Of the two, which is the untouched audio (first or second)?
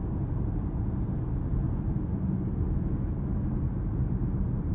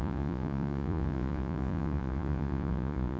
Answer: first